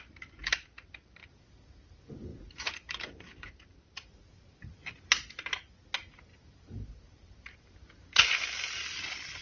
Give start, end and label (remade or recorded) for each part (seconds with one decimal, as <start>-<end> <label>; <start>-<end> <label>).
0.0-0.4 recorded; 0.4-1.3 remade; 1.3-2.3 recorded; 2.3-4.7 remade; 4.7-6.3 recorded; 6.3-8.9 remade; 8.9-9.4 recorded